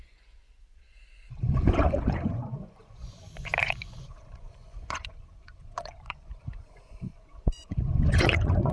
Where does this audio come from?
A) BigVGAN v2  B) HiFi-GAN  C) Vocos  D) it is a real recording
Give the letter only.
C